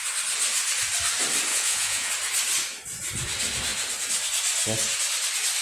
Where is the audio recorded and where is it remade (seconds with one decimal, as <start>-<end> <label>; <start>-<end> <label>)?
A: 0.0-1.5 recorded; 1.5-2.1 remade; 2.1-5.6 recorded